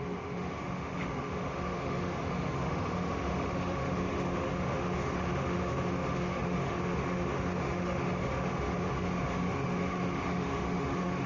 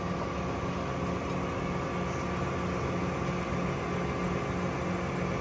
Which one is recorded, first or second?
second